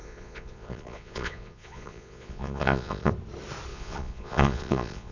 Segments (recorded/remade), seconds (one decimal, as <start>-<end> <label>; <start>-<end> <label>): 0.0-3.1 remade; 3.1-3.7 recorded; 3.7-5.1 remade